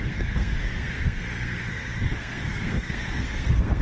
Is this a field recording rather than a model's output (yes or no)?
no